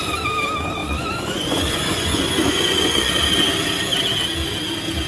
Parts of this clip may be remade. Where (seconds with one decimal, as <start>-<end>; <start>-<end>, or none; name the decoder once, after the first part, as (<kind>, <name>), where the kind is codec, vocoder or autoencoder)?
0.8-3.1 (vocoder, Vocos)